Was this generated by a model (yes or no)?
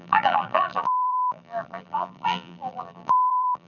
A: yes